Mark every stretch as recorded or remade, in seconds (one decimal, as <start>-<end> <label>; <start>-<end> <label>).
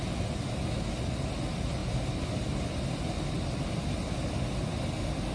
0.0-5.3 recorded